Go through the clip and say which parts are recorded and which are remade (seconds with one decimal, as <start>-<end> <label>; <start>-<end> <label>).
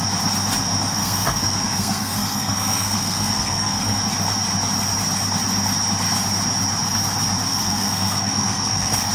0.0-1.0 recorded; 1.0-4.0 remade; 4.0-7.5 recorded; 7.5-9.1 remade